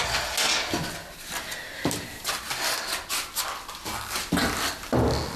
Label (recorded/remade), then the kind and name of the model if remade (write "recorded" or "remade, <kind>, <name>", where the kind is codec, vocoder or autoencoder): recorded